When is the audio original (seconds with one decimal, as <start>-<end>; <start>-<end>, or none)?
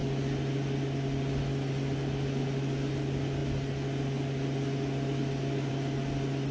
0.0-6.5